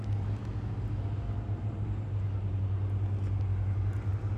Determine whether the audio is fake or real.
real